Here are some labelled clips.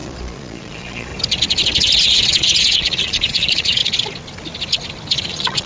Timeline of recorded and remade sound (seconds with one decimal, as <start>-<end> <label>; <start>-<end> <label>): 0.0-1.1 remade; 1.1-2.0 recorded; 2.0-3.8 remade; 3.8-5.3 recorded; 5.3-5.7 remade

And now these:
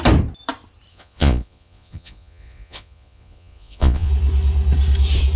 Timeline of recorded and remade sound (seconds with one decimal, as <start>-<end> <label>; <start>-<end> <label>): 0.0-0.9 recorded; 0.9-4.1 remade; 4.1-5.4 recorded

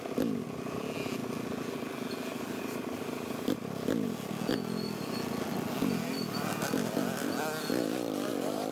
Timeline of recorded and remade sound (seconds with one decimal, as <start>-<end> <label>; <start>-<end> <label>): 0.0-8.7 recorded

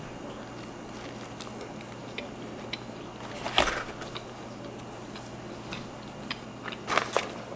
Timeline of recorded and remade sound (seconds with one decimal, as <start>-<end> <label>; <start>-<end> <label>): 0.0-7.6 recorded

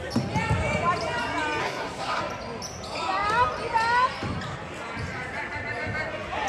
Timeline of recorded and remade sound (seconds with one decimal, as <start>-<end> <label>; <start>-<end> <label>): 0.0-1.6 recorded; 1.6-2.2 remade; 2.2-6.5 recorded

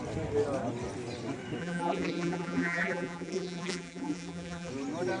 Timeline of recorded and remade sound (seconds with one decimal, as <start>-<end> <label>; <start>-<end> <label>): 0.0-1.6 recorded; 1.6-4.7 remade; 4.7-5.2 recorded